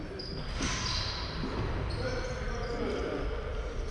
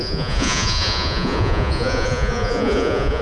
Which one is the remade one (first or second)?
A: second